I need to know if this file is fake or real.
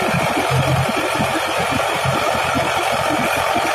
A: real